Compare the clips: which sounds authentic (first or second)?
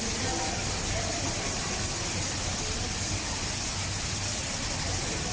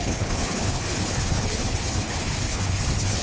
first